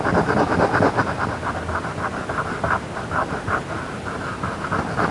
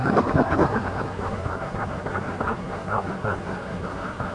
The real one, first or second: first